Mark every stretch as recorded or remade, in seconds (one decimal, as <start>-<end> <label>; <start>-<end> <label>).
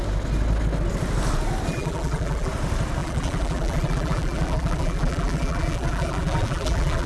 0.0-1.7 recorded; 1.7-2.5 remade; 2.5-3.0 recorded; 3.0-7.1 remade